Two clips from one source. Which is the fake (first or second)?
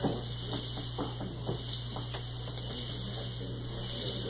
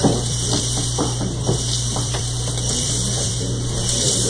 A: second